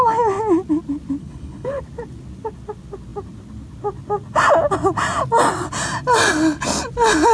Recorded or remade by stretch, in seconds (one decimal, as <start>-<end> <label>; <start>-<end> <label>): 0.0-1.2 recorded; 1.2-1.8 remade; 1.8-7.3 recorded